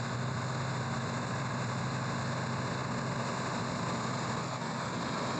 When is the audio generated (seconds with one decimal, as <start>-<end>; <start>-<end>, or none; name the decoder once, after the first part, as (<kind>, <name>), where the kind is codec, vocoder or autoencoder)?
4.4-5.0 (codec, SNAC)